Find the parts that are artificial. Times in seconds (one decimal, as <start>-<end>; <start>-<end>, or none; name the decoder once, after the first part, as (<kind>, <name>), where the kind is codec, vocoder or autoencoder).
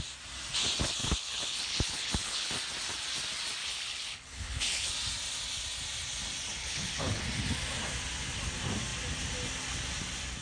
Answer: 1.0-2.5 (codec, HILCodec); 3.6-4.9; 6.6-7.2